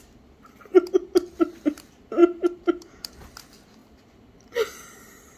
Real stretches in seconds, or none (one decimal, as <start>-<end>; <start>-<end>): 0.0-5.4